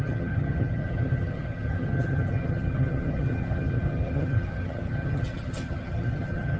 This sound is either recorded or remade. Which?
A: remade